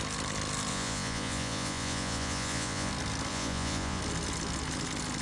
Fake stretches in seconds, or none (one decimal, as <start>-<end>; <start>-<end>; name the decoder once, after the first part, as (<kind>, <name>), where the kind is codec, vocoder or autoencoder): 0.7-2.9 (vocoder, Vocos); 3.3-4.0